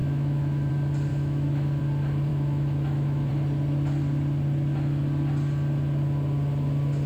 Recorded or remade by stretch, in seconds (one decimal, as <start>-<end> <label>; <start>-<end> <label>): 0.0-0.7 remade; 0.7-1.1 recorded; 1.1-1.8 remade; 1.8-2.3 recorded; 2.3-3.3 remade; 3.3-7.1 recorded